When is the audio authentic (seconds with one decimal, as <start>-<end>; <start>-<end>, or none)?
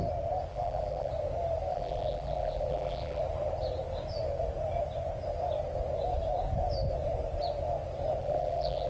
0.0-0.5; 1.1-1.7; 3.2-8.2